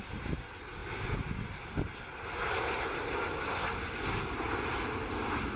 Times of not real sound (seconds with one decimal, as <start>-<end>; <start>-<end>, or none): none